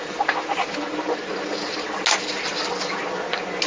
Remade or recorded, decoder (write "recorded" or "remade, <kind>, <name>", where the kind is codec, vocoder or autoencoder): recorded